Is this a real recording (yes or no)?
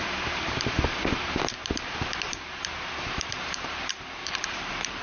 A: no